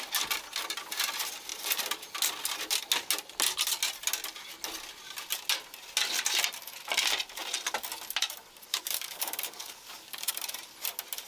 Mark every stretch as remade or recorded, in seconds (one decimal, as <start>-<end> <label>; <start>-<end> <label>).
0.0-8.7 recorded; 8.7-10.3 remade; 10.3-11.3 recorded